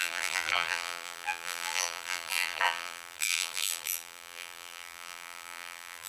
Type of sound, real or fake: fake